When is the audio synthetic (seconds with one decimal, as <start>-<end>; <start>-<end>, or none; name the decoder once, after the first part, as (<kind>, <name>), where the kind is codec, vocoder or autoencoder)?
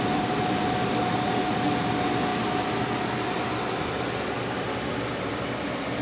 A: none